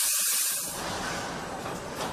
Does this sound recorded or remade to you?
recorded